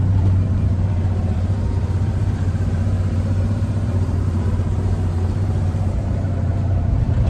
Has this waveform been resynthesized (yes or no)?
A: yes